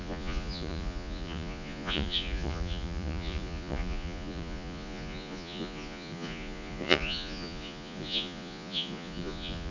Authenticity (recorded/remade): remade